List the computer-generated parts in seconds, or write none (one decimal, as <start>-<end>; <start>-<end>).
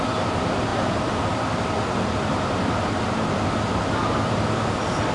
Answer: 0.0-5.1